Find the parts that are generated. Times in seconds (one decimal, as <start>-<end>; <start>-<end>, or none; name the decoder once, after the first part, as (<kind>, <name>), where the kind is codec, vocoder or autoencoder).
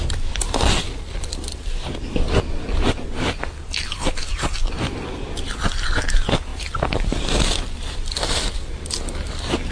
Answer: none